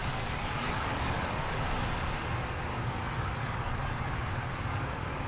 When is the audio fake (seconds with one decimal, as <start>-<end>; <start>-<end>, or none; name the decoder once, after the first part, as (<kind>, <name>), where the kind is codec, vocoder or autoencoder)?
0.0-1.6 (codec, DAC); 2.7-5.3